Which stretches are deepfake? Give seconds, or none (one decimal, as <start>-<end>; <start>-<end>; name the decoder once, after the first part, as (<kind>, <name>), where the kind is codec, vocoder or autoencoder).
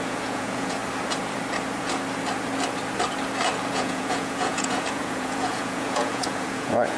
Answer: 0.0-0.8 (vocoder, Vocos); 3.7-7.0